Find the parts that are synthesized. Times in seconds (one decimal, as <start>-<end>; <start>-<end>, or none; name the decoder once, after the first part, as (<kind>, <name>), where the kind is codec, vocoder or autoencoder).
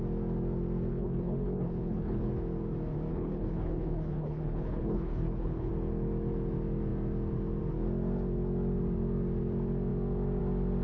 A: 0.9-2.3 (codec, HILCodec); 3.1-5.7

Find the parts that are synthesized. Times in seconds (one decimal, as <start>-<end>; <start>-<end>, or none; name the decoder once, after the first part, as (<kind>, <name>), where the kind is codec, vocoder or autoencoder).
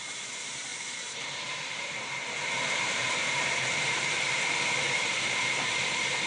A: 0.0-6.3 (vocoder, BigVGAN v2)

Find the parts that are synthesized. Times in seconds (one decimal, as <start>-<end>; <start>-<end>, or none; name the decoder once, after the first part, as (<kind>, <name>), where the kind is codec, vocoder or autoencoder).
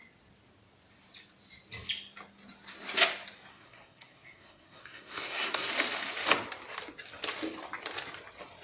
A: 3.5-5.7 (codec, SNAC)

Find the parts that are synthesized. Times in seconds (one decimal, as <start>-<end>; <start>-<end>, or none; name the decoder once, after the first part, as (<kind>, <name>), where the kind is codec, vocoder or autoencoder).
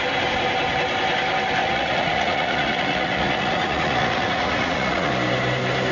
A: 1.6-5.1 (vocoder, Vocos)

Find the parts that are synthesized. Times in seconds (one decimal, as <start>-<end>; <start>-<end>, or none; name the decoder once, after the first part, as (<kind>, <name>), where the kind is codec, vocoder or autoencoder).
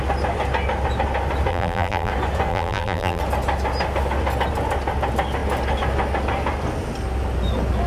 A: 1.5-2.1 (vocoder, BigVGAN v2); 2.5-3.2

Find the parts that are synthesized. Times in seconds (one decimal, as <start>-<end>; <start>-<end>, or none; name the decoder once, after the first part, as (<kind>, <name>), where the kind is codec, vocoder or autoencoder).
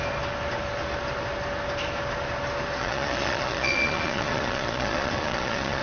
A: 2.8-5.8 (vocoder, Vocos)